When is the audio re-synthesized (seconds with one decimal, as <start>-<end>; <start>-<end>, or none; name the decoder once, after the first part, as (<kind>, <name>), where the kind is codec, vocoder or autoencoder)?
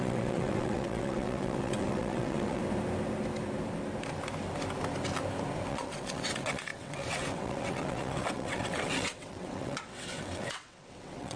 0.0-2.6 (vocoder, WaveNeXt); 5.7-11.4